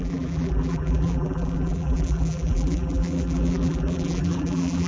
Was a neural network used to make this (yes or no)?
yes